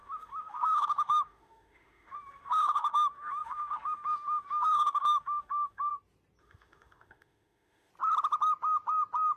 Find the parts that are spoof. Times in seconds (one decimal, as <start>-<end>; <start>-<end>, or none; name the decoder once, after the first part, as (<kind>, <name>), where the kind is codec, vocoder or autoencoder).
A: 0.0-5.9 (autoencoder, DAC-VAE); 6.4-7.9